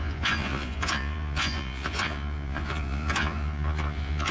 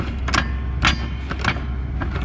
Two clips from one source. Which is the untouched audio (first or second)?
second